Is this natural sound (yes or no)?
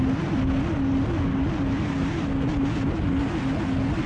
yes